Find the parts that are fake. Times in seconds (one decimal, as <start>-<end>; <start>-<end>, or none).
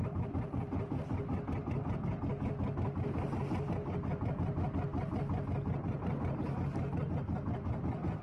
none